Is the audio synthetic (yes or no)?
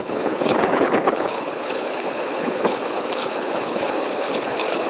yes